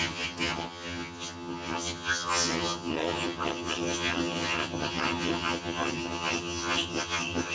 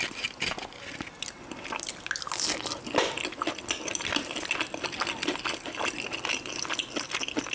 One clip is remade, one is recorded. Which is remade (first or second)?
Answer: first